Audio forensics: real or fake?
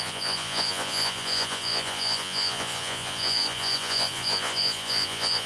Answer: fake